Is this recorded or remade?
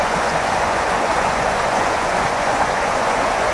remade